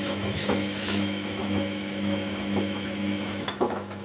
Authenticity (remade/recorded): remade